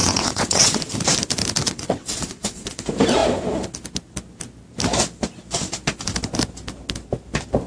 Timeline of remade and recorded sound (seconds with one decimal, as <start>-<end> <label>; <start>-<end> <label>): 0.0-0.8 remade; 0.8-1.6 recorded; 1.6-2.8 remade; 2.8-7.7 recorded